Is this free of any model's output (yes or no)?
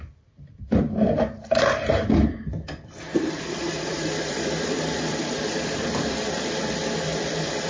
no